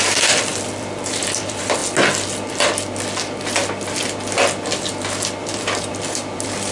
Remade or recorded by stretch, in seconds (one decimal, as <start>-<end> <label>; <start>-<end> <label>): 0.0-1.8 remade; 1.8-5.8 recorded; 5.8-6.7 remade